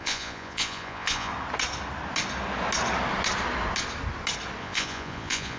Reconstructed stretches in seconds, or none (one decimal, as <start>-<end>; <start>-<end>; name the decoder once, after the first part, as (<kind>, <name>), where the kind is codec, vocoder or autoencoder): 0.0-1.3 (vocoder, Vocos); 4.6-5.6